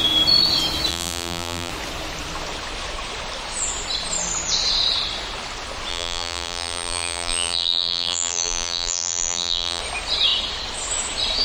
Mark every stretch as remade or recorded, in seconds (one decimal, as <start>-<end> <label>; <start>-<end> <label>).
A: 0.0-0.9 recorded; 0.9-1.7 remade; 1.7-5.9 recorded; 5.9-9.8 remade; 9.8-11.4 recorded